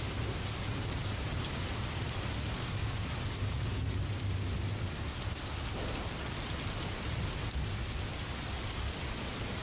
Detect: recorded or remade recorded